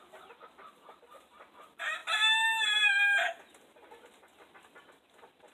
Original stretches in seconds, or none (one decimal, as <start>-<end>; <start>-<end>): 0.0-5.5